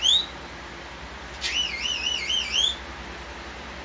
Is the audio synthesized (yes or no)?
no